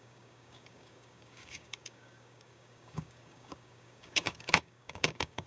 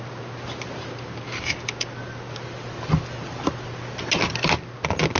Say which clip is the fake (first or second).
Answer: first